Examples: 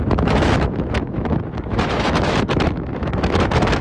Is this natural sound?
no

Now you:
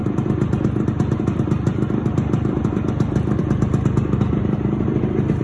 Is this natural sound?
no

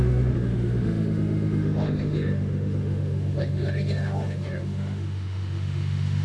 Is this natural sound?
no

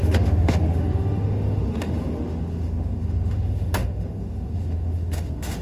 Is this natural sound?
no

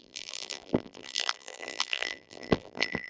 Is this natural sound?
no